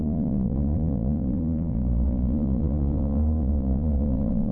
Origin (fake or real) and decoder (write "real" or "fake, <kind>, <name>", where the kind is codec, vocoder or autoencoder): fake, vocoder, Vocos